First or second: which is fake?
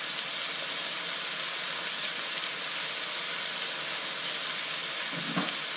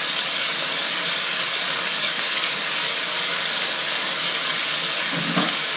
second